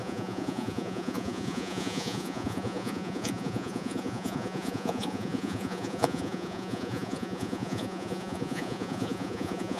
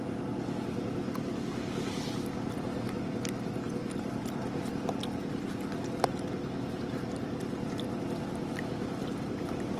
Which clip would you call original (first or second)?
second